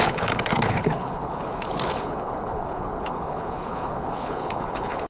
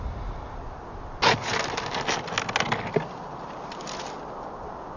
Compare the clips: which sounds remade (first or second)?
first